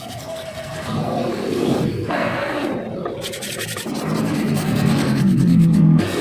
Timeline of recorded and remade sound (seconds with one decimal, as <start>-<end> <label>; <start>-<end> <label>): 0.0-2.7 remade; 2.7-4.2 recorded; 4.2-6.2 remade